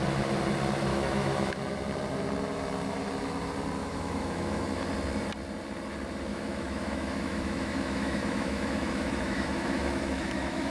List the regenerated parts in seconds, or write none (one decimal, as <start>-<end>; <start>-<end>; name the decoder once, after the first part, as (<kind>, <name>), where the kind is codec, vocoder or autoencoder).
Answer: 0.9-1.6 (autoencoder, DAC-VAE); 3.8-4.6; 6.3-10.7